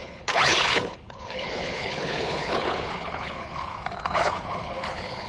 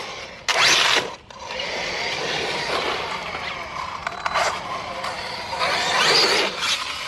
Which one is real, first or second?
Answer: second